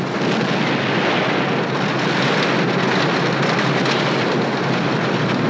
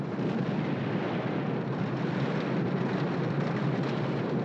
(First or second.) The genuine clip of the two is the first